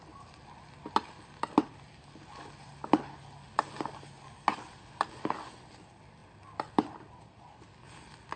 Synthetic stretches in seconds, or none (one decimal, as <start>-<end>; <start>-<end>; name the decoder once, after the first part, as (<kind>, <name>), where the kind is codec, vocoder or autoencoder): none